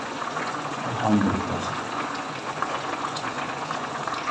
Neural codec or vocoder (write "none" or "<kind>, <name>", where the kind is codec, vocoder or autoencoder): vocoder, Vocos